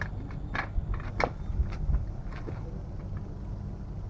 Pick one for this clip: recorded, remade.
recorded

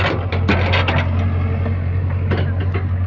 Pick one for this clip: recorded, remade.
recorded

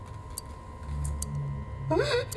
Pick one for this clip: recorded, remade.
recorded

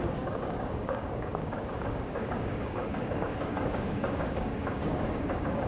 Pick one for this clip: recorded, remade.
remade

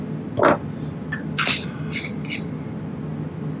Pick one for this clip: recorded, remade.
recorded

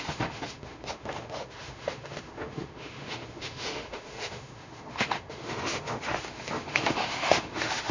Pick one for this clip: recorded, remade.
remade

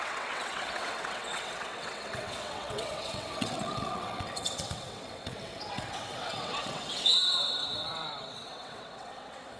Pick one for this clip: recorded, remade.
remade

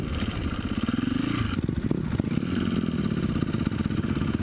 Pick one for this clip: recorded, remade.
recorded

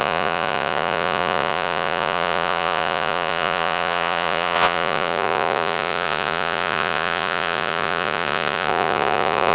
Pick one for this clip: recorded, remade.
remade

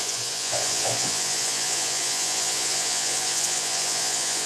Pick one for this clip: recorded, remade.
remade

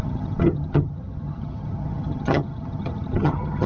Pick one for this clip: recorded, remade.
remade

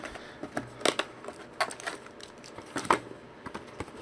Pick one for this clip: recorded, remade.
recorded